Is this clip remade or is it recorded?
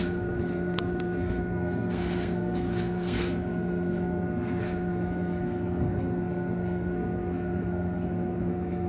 remade